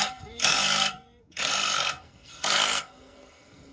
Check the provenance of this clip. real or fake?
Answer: fake